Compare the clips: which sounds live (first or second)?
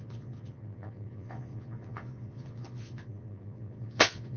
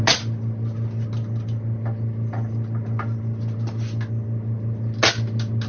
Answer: second